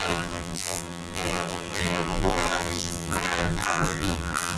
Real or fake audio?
fake